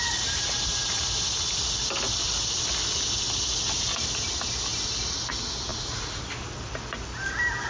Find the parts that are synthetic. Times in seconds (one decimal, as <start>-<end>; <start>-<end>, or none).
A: 5.7-6.2